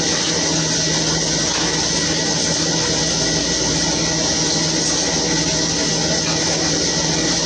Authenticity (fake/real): real